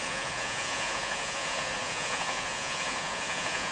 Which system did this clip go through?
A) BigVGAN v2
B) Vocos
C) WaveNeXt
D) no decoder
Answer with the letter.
B